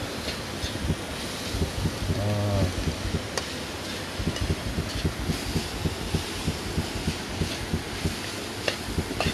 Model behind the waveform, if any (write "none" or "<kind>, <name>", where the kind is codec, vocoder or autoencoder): none